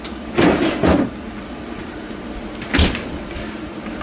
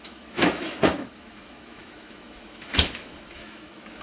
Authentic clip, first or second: first